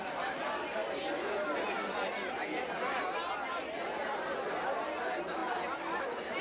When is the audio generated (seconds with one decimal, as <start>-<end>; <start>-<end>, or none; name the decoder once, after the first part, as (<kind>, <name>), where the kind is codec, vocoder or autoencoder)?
0.0-0.8 (vocoder, BigVGAN v2); 4.6-5.4; 6.0-6.4